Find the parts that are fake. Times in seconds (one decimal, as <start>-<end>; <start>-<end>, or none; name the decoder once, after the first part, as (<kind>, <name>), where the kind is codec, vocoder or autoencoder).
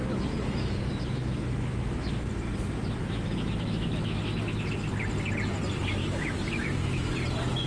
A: 0.0-2.2 (autoencoder, DAC-VAE); 3.0-4.2; 6.0-7.1